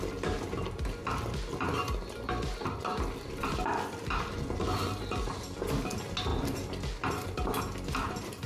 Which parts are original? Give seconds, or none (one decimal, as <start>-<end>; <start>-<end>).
0.0-8.5